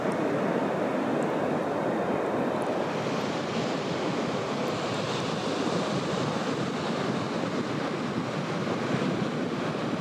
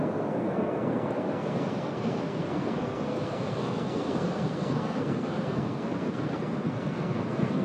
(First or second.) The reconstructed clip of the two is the second